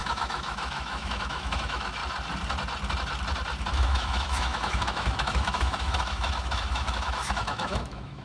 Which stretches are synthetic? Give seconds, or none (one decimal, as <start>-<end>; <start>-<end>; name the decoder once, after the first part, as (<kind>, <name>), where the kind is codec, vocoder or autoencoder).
0.0-2.0 (autoencoder, DAC-VAE); 3.7-8.2